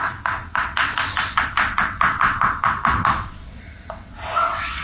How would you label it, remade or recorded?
remade